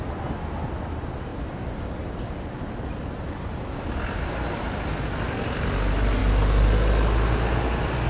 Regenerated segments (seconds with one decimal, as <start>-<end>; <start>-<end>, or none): none